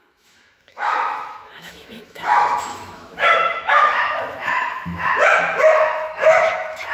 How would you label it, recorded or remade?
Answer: remade